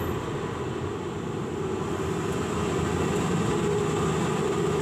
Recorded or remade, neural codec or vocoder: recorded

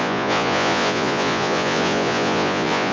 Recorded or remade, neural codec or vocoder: remade, vocoder, Vocos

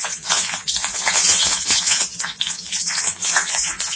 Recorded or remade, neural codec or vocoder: remade, vocoder, Vocos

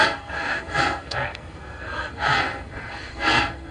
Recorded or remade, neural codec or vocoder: remade, codec, SNAC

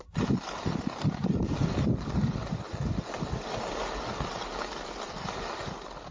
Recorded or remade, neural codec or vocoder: recorded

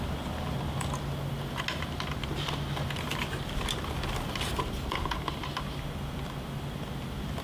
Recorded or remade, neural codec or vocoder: recorded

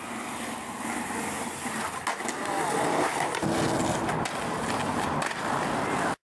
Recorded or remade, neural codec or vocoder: recorded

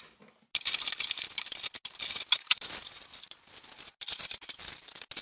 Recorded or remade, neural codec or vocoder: recorded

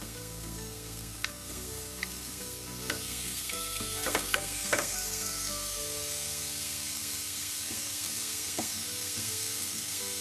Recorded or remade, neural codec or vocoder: remade, codec, SNAC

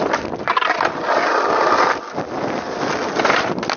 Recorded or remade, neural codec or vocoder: recorded